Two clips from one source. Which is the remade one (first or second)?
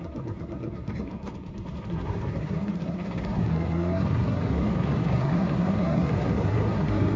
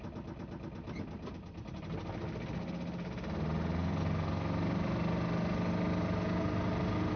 first